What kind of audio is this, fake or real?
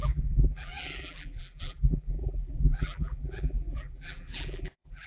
fake